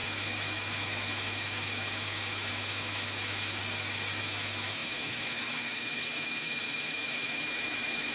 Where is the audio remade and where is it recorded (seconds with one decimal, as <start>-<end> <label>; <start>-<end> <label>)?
0.0-3.6 remade; 3.6-4.2 recorded; 4.2-8.1 remade